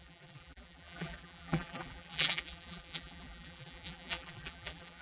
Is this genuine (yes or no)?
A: no